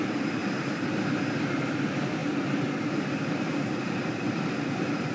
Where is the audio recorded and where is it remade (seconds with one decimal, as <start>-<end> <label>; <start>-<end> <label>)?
0.0-0.4 recorded; 0.4-1.2 remade; 1.2-2.2 recorded; 2.2-5.1 remade